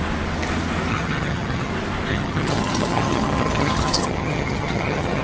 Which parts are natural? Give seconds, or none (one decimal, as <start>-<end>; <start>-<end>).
0.0-0.9; 1.7-2.1